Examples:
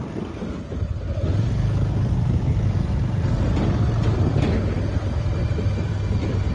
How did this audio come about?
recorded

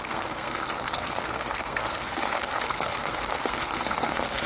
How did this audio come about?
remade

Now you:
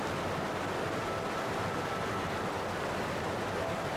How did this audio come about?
recorded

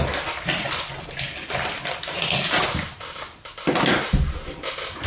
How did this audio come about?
recorded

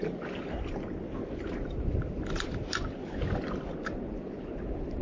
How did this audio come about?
recorded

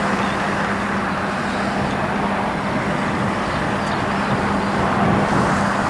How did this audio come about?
recorded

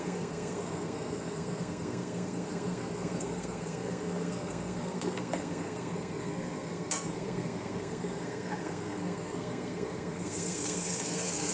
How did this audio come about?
remade